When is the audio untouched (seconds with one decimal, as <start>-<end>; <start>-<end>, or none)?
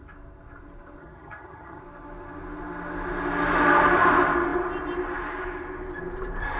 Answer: 0.0-1.0; 1.8-6.6